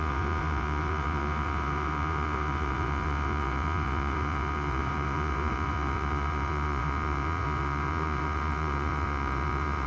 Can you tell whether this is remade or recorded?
remade